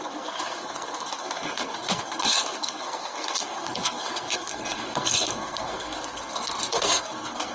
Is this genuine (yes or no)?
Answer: no